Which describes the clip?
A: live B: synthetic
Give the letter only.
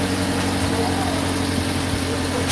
A